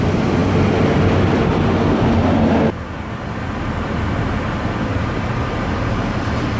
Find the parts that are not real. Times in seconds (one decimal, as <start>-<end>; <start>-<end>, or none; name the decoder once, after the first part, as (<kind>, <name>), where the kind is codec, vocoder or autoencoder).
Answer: 4.9-6.6 (vocoder, BigVGAN v2)